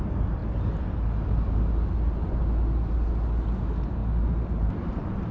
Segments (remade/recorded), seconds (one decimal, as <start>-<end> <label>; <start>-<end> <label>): 0.0-0.4 remade; 0.4-3.6 recorded; 3.6-4.0 remade; 4.0-4.5 recorded; 4.5-5.3 remade